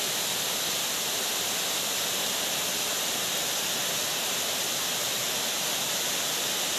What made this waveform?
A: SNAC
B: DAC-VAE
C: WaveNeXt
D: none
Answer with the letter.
D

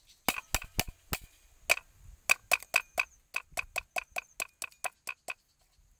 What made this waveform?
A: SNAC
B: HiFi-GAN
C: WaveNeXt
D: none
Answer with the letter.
D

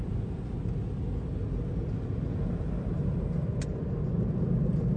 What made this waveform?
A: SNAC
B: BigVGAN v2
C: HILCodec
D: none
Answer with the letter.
D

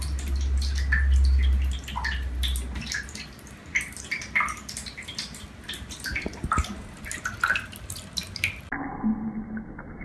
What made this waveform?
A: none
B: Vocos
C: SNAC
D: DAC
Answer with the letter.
A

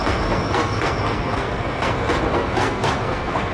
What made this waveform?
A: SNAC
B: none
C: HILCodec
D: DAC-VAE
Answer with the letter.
A